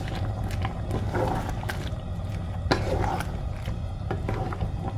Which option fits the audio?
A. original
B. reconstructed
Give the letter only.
A